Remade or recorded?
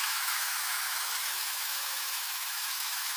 remade